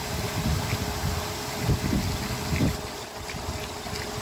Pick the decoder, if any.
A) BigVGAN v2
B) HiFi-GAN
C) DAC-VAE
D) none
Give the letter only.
D